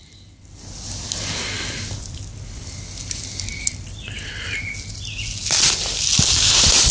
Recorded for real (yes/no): yes